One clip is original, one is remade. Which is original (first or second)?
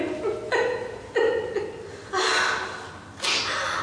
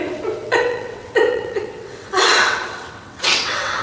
first